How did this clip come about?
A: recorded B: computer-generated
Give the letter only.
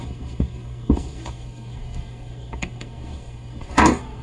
B